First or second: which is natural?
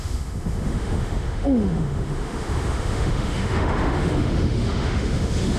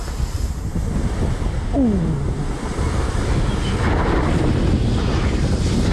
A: second